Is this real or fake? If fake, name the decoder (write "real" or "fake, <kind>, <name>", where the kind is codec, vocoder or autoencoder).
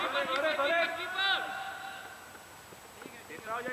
real